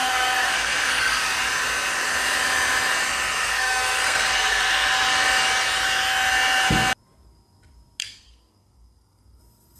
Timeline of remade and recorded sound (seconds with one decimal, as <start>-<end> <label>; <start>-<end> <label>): 0.0-1.2 remade; 1.2-3.4 recorded; 3.4-4.9 remade; 4.9-8.0 recorded; 8.0-9.4 remade; 9.4-9.8 recorded